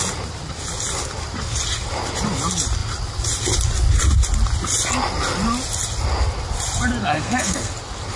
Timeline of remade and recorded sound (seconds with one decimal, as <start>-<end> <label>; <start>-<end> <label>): 0.0-7.0 recorded; 7.0-7.7 remade; 7.7-8.2 recorded